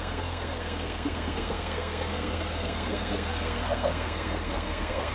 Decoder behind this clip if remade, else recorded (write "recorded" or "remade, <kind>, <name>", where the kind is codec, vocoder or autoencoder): remade, codec, SNAC